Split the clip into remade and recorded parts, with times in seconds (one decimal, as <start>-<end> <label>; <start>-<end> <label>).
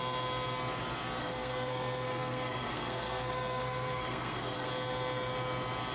0.0-1.2 recorded; 1.2-4.7 remade; 4.7-5.9 recorded